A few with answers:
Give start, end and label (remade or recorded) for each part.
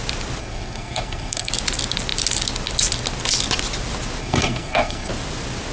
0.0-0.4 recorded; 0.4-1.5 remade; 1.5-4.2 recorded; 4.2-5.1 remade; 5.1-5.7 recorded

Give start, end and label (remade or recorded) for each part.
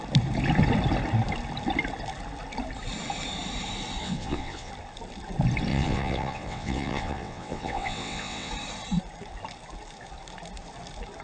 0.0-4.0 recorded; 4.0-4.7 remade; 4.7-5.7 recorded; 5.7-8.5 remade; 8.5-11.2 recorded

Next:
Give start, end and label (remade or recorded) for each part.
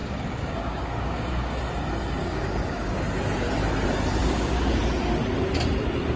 0.0-1.6 remade; 1.6-2.2 recorded; 2.2-3.0 remade; 3.0-4.2 recorded; 4.2-4.8 remade; 4.8-6.2 recorded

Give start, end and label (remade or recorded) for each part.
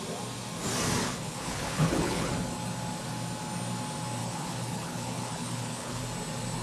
0.0-1.0 recorded; 1.0-2.3 remade; 2.3-4.2 recorded; 4.2-6.0 remade; 6.0-6.6 recorded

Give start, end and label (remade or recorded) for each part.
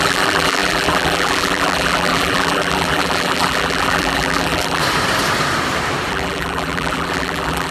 0.0-4.8 remade; 4.8-6.1 recorded; 6.1-7.7 remade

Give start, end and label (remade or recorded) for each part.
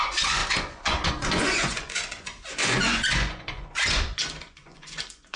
0.0-5.4 remade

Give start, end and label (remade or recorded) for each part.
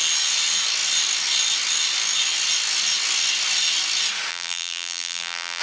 0.0-4.3 recorded; 4.3-5.6 remade